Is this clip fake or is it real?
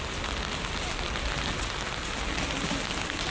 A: real